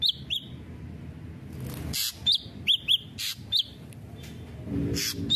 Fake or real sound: real